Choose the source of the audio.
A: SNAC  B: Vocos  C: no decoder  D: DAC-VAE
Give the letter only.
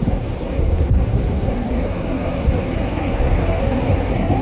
A